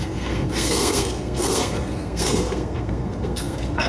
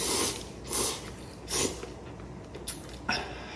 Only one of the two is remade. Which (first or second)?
first